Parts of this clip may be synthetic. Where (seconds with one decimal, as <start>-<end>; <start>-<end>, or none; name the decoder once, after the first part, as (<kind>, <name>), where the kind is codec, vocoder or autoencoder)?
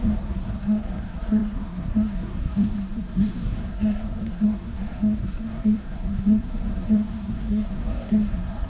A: 0.0-8.7 (codec, SNAC)